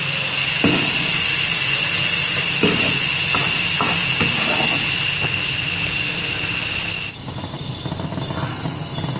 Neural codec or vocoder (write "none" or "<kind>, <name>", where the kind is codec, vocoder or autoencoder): none